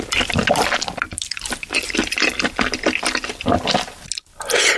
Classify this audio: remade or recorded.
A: recorded